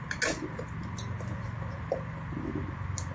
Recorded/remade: recorded